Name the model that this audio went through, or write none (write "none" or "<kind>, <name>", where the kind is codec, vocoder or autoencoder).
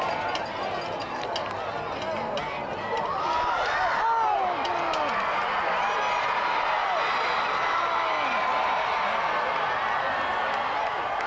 none